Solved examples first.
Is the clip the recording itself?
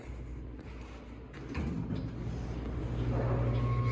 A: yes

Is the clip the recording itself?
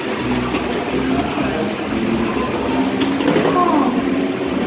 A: yes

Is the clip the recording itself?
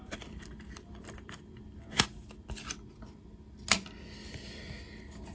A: yes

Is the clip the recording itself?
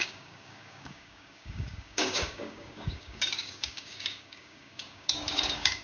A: no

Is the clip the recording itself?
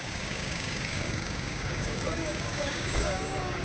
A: no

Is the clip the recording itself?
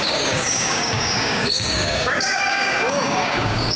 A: no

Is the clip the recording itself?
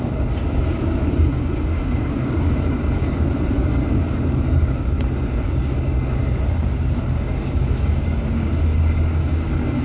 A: no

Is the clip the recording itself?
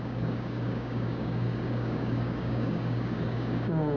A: no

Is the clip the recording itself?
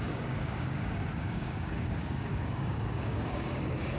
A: no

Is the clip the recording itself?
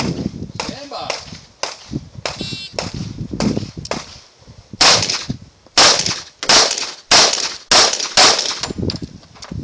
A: yes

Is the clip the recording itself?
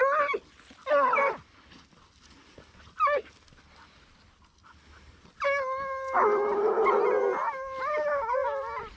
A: yes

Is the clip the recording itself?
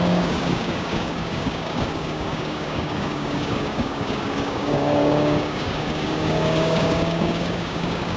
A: no